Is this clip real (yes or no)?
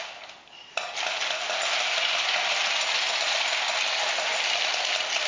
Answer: yes